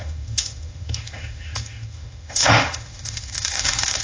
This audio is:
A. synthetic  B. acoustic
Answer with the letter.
A